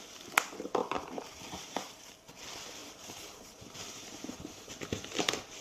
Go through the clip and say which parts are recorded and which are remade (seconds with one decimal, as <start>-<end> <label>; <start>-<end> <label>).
0.0-0.8 recorded; 0.8-2.3 remade; 2.3-2.8 recorded; 2.8-4.7 remade; 4.7-5.6 recorded